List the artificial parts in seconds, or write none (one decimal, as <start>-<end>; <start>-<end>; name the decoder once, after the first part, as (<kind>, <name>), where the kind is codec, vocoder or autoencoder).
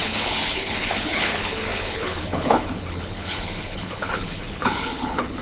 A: 0.0-5.4 (codec, HILCodec)